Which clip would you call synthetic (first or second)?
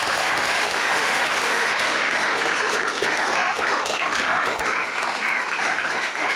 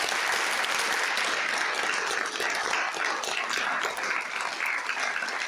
first